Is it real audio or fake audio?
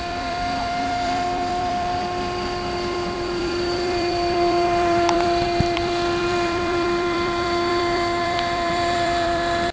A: fake